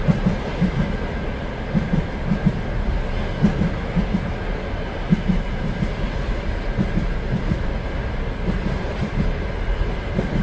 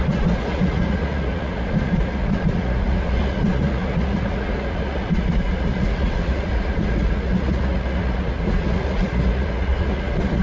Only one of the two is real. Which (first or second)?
first